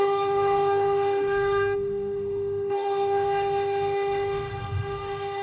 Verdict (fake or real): fake